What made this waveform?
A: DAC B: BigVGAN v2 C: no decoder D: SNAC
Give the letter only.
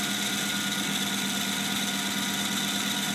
C